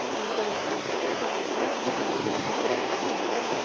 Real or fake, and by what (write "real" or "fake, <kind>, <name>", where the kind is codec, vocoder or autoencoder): fake, codec, SNAC